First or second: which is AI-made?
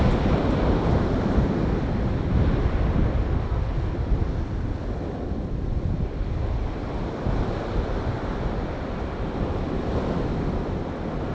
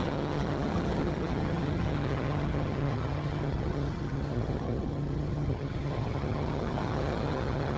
second